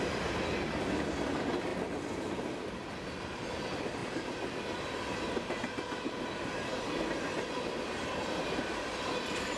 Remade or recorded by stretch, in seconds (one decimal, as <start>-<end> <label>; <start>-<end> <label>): 0.0-9.6 recorded

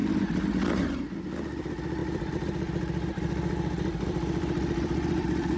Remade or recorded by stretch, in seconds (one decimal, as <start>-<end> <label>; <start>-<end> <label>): 0.0-1.0 remade; 1.0-2.0 recorded; 2.0-5.6 remade

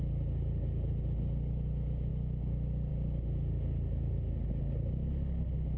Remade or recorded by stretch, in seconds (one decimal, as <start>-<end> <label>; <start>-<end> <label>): 0.0-5.8 recorded

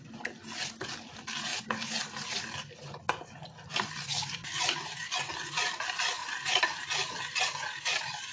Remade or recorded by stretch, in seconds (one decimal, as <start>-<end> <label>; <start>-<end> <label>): 0.0-8.3 recorded

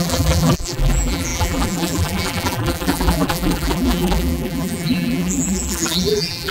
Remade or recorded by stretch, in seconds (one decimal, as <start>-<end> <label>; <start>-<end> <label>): 0.0-6.5 remade

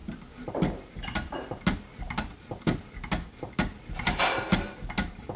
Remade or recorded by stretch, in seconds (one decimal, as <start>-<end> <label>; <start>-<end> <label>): 0.0-5.4 recorded

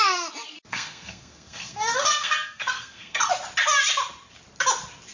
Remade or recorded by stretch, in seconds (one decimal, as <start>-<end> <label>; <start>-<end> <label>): 0.0-0.7 recorded; 0.7-3.3 remade; 3.3-5.1 recorded

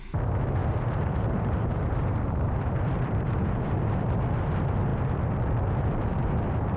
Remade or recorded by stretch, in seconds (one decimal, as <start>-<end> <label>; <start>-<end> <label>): 0.0-0.6 recorded; 0.6-4.3 remade; 4.3-6.8 recorded